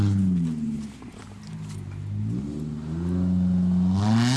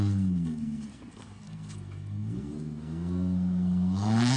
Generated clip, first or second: second